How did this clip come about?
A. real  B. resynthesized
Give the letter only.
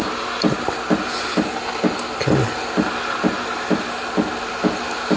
A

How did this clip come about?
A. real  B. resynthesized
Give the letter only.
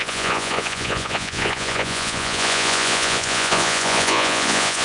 B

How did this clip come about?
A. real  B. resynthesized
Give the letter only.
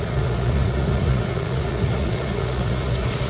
B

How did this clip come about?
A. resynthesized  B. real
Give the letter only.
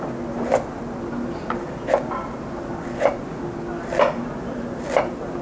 B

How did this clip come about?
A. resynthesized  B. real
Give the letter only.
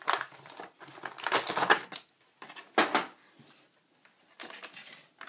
B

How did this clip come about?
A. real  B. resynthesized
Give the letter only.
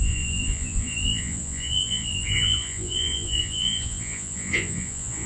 B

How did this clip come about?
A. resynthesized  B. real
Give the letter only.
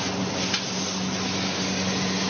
B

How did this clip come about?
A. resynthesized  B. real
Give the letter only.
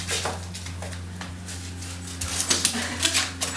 B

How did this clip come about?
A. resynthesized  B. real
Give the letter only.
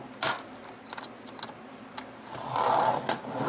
B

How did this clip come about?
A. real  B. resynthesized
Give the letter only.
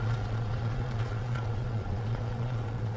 B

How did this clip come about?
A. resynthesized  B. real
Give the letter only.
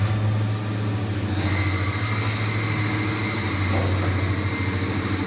B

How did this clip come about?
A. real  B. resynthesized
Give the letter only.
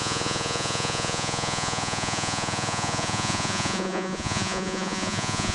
B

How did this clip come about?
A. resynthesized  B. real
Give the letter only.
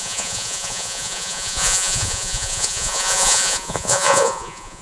A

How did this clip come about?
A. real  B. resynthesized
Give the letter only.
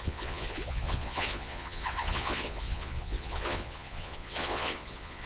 B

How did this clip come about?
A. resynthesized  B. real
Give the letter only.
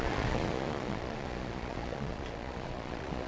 A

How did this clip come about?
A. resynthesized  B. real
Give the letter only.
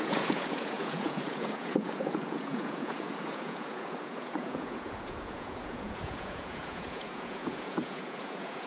A